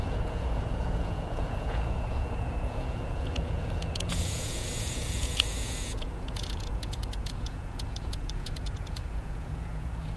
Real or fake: fake